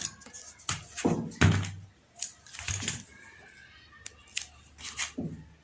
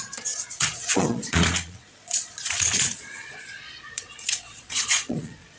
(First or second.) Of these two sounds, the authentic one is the first